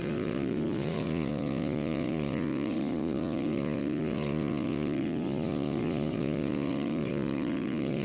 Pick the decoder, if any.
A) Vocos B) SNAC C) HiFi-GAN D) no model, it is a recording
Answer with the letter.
A